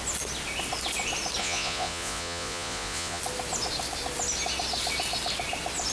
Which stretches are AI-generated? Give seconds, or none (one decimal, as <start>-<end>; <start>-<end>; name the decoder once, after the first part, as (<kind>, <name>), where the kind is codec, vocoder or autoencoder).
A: 1.4-3.2 (vocoder, Vocos)